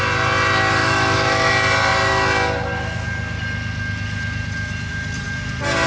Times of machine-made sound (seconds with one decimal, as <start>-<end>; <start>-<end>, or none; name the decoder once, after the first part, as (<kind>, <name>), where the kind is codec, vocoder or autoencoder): 0.8-1.5 (autoencoder, DAC-VAE)